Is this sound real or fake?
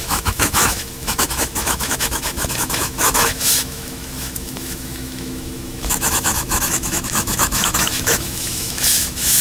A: fake